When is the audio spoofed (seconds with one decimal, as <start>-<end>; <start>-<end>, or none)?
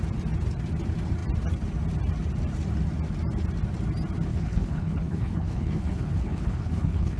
4.3-7.2